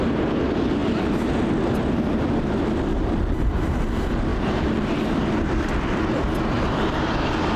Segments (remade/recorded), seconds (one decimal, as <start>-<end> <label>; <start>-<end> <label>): 0.0-2.9 recorded; 2.9-3.8 remade; 3.8-4.3 recorded; 4.3-5.7 remade; 5.7-7.6 recorded